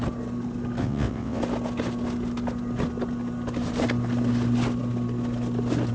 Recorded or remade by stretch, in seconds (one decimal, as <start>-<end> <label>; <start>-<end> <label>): 0.0-0.8 recorded; 0.8-1.4 remade; 1.4-5.9 recorded